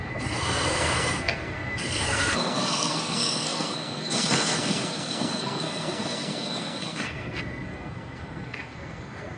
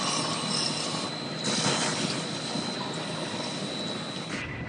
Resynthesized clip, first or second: first